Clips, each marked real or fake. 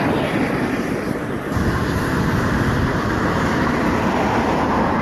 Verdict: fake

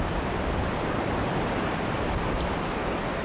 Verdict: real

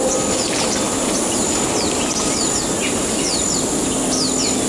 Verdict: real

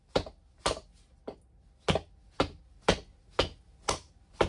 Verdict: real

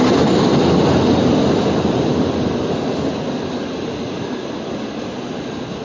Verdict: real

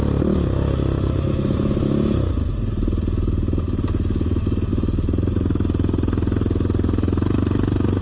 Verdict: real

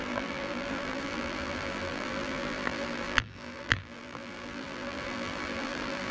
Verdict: fake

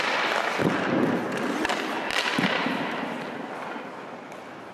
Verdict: real